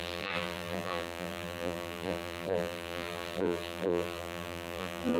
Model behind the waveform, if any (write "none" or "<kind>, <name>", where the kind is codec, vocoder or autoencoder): vocoder, BigVGAN v2